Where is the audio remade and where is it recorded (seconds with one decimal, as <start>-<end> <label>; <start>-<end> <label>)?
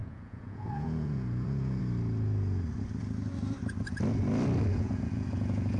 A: 0.0-1.8 remade; 1.8-4.7 recorded; 4.7-5.8 remade